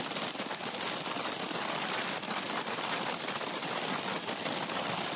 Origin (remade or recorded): recorded